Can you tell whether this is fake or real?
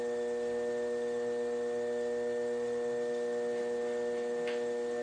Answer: real